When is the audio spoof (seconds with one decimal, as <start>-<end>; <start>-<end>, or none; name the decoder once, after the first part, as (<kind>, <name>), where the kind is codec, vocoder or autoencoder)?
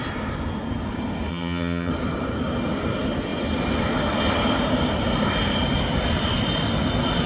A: 1.3-1.9 (vocoder, HiFi-GAN)